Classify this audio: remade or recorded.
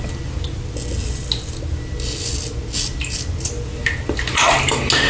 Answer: recorded